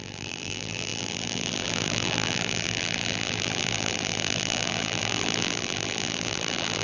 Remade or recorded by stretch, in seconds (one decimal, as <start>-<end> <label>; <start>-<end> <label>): 0.0-6.8 remade